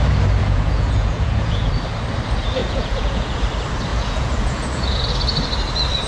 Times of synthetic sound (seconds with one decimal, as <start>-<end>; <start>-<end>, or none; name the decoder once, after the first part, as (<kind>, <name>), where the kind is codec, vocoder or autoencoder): 0.4-1.7 (vocoder, Vocos); 2.6-3.4; 3.9-5.1